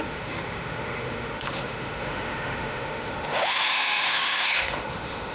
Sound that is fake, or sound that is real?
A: fake